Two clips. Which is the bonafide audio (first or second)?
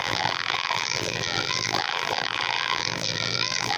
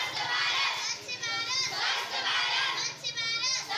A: second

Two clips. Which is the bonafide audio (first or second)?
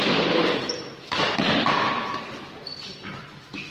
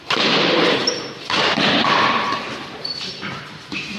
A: first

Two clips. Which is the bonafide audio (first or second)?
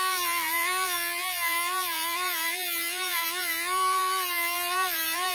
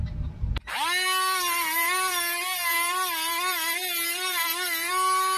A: second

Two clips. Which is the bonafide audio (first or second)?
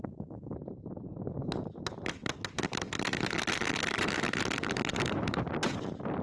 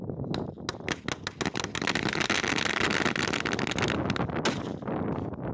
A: second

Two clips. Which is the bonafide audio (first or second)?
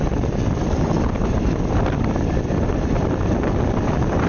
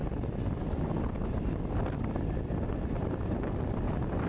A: second